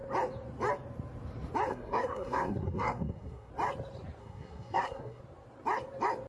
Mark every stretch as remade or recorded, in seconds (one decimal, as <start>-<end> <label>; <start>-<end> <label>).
0.0-1.7 recorded; 1.7-3.5 remade; 3.5-4.2 recorded; 4.2-5.2 remade; 5.2-6.3 recorded